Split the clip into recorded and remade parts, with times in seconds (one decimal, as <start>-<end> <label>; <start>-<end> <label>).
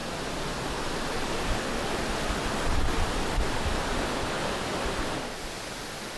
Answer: 0.0-6.2 recorded